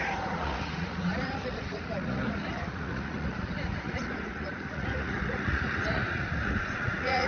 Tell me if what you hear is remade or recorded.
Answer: remade